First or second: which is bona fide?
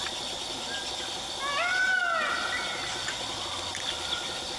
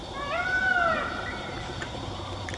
first